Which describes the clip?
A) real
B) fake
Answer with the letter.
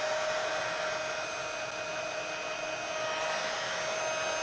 A